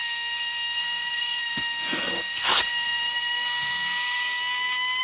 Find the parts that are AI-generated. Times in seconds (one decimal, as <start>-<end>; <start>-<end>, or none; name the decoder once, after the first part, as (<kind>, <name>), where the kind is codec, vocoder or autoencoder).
0.0-4.4 (codec, SNAC)